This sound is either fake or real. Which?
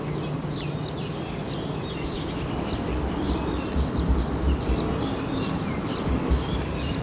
real